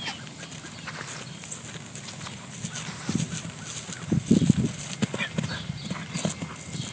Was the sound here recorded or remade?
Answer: recorded